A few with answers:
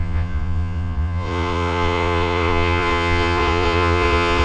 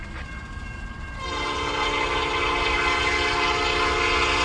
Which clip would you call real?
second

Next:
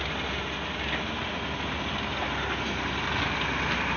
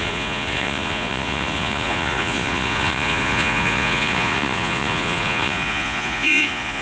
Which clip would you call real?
first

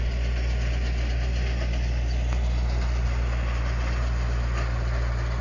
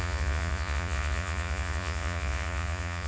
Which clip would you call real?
first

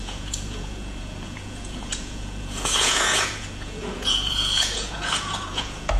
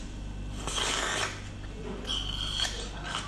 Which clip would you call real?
second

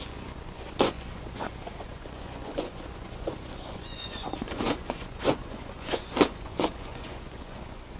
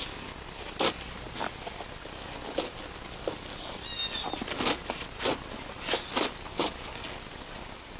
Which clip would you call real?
second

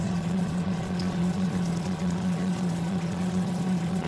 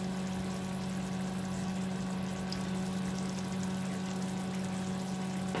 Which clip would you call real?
second